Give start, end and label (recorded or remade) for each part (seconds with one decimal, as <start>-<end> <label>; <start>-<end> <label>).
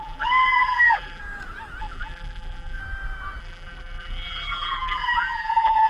0.0-1.2 remade; 1.2-1.8 recorded; 1.8-2.8 remade; 2.8-3.4 recorded; 3.4-5.9 remade